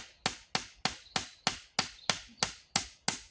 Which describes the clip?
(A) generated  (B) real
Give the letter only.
B